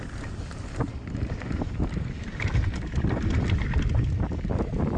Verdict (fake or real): real